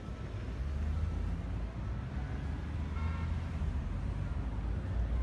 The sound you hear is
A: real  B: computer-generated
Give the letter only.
A